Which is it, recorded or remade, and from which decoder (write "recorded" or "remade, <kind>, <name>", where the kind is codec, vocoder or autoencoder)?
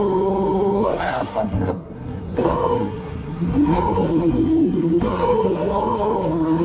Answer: remade, codec, SNAC